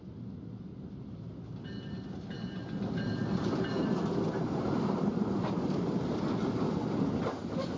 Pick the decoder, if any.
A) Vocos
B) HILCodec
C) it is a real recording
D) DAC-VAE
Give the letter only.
C